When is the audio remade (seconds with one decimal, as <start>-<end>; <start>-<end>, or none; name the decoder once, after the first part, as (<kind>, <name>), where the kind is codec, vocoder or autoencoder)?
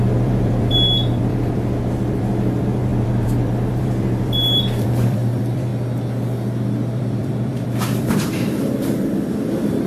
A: 0.0-5.7 (vocoder, BigVGAN v2); 7.0-9.9